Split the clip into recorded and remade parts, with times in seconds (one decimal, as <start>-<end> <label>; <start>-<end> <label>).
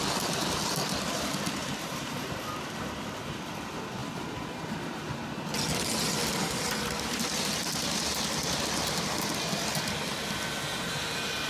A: 0.0-1.6 recorded; 1.6-2.3 remade; 2.3-11.5 recorded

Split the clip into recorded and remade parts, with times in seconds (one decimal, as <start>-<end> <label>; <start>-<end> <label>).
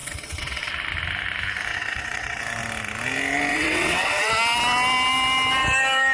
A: 0.0-0.7 remade; 0.7-1.7 recorded; 1.7-2.4 remade; 2.4-3.5 recorded; 3.5-4.3 remade; 4.3-6.1 recorded